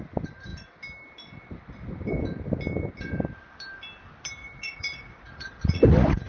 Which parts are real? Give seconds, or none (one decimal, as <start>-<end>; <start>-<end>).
0.0-4.4; 5.8-6.3

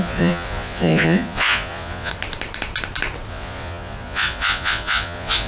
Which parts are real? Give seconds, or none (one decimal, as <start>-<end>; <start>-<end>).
2.1-3.3

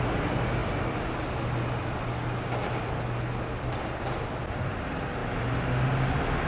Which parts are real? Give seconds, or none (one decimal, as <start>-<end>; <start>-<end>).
0.0-6.5

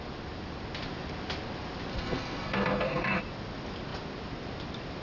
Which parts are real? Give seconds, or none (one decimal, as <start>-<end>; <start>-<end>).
0.0-1.9; 3.2-5.0